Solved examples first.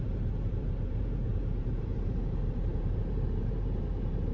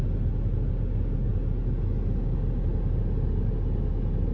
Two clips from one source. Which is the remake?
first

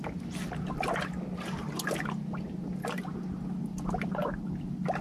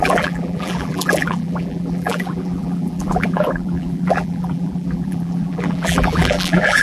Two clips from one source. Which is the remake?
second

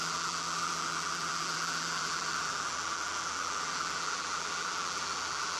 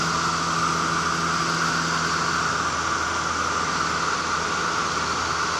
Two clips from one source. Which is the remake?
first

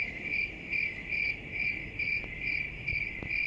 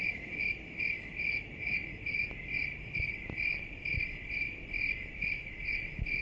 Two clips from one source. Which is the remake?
second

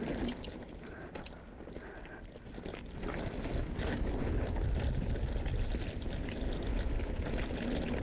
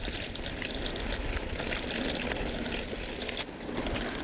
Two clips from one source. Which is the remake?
second